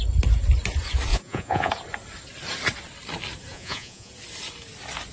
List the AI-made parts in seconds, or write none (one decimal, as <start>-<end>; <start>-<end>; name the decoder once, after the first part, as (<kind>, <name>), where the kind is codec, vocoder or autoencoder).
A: 1.1-1.7 (vocoder, Vocos); 3.5-4.1

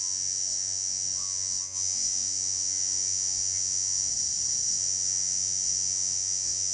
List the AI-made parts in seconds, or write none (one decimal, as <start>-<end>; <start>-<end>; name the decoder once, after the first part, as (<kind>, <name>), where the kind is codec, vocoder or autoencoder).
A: 0.0-4.1 (vocoder, Vocos); 4.7-6.7